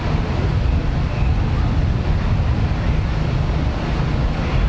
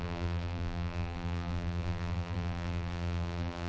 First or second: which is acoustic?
first